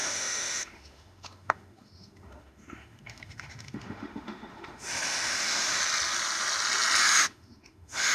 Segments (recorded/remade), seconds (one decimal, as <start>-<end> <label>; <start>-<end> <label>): 0.0-5.8 remade; 5.8-7.0 recorded; 7.0-8.1 remade